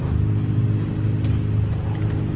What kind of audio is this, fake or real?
real